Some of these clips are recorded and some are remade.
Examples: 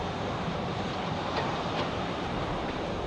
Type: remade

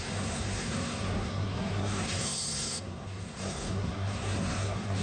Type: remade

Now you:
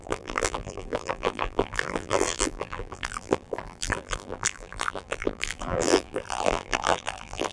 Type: remade